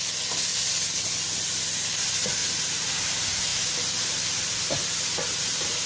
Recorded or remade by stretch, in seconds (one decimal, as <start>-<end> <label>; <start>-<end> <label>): 0.0-2.4 recorded; 2.4-3.0 remade; 3.0-5.9 recorded